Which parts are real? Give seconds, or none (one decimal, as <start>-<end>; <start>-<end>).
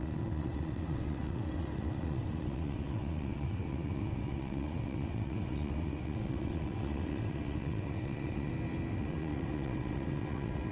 8.5-9.0